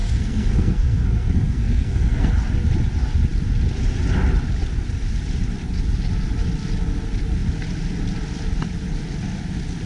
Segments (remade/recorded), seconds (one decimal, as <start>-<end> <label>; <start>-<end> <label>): 0.0-2.3 remade; 2.3-9.9 recorded